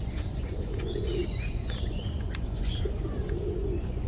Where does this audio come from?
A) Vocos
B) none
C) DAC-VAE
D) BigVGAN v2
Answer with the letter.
A